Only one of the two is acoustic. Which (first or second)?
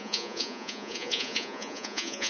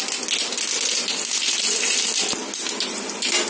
second